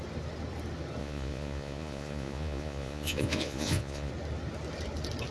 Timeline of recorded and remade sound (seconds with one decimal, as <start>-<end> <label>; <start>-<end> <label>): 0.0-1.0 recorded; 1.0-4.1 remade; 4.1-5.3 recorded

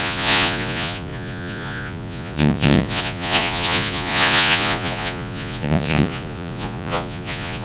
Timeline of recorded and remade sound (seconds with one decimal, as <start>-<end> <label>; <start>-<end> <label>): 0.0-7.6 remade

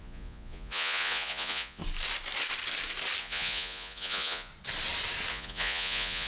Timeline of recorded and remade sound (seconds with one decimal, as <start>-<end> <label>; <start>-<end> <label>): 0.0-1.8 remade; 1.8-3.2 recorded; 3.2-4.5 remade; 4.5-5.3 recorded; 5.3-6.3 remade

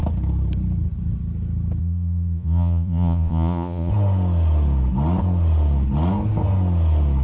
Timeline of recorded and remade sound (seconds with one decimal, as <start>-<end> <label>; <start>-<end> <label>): 0.0-1.8 recorded; 1.8-3.9 remade; 3.9-7.2 recorded

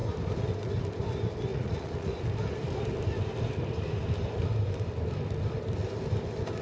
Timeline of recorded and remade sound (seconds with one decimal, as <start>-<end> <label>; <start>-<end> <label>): 0.0-1.5 recorded; 1.5-2.2 remade; 2.2-6.6 recorded

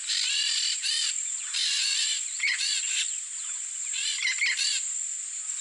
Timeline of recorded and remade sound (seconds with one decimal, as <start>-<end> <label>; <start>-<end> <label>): 0.0-1.6 recorded; 1.6-3.1 remade; 3.1-5.6 recorded

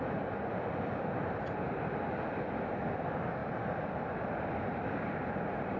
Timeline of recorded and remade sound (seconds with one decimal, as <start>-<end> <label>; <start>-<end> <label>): 0.0-5.8 recorded

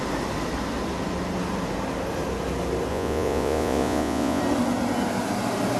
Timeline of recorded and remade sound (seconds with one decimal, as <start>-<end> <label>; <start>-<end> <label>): 0.0-2.9 recorded; 2.9-4.4 remade; 4.4-5.8 recorded